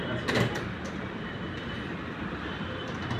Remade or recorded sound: recorded